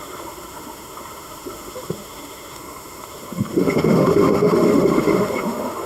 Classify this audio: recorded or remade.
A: remade